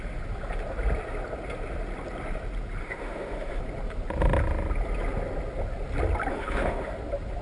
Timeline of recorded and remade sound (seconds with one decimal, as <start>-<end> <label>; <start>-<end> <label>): 0.0-2.8 recorded; 2.8-3.6 remade; 3.6-6.3 recorded; 6.3-6.9 remade; 6.9-7.4 recorded